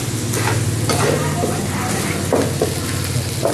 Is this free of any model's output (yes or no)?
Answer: yes